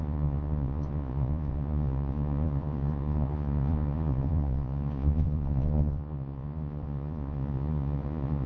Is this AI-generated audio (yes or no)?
yes